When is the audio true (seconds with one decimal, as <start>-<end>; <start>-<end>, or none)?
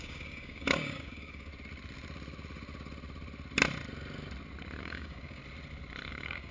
1.5-4.8; 5.4-6.1